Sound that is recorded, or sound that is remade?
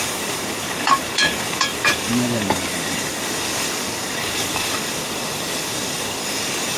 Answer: remade